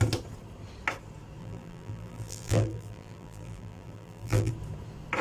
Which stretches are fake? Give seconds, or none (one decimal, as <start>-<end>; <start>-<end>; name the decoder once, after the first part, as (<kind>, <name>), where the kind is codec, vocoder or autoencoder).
1.4-4.5 (vocoder, BigVGAN v2)